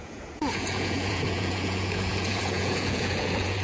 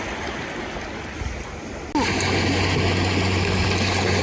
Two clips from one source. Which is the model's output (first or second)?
first